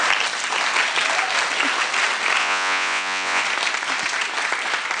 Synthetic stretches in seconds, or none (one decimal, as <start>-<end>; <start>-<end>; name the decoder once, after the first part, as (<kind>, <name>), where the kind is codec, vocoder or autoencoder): 2.4-3.4 (vocoder, Vocos)